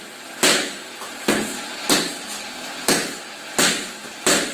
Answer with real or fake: real